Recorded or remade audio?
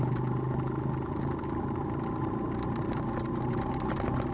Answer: recorded